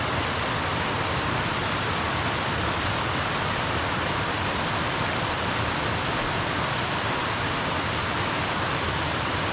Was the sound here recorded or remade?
recorded